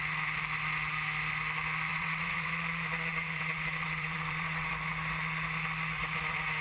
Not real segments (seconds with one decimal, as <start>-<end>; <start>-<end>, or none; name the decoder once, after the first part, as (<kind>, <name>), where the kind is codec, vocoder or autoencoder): 1.9-2.5 (vocoder, WaveNeXt); 3.1-4.7